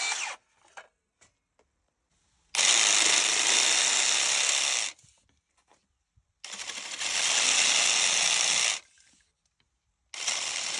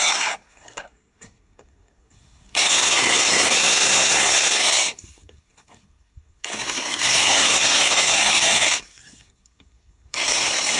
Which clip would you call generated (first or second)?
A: second